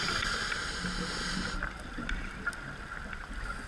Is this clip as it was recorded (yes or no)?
yes